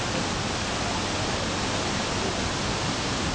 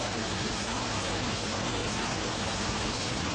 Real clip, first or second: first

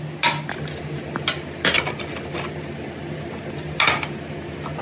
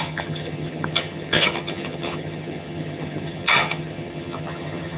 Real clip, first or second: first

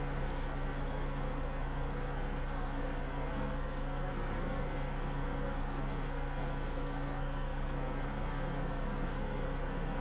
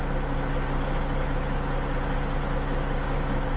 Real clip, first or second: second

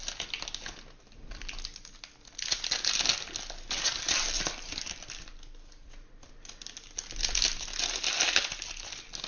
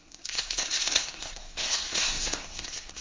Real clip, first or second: first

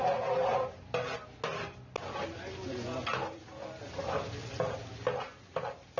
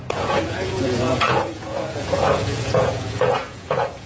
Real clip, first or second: first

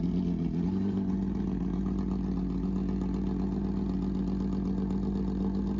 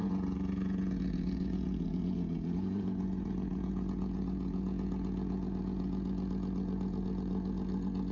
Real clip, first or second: first